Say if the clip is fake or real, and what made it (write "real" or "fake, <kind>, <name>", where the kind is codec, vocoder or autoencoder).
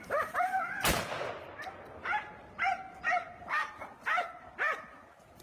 real